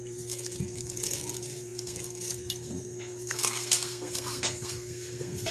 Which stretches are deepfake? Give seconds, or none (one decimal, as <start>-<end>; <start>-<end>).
0.0-5.5